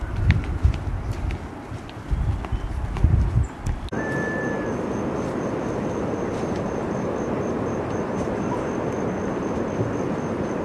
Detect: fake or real real